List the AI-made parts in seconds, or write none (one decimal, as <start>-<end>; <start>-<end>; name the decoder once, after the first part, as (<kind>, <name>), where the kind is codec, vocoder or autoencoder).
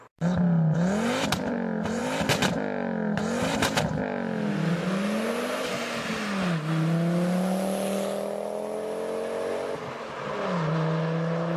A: none